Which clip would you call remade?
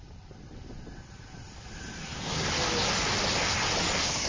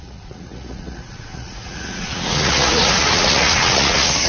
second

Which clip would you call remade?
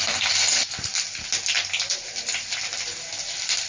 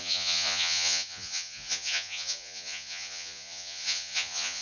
second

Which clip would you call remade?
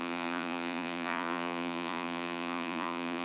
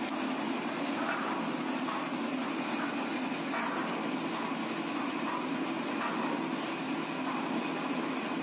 first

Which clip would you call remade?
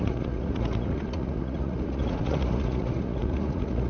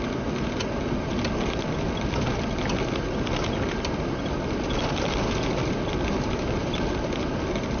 first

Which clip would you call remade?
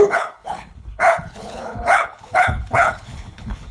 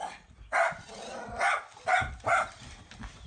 first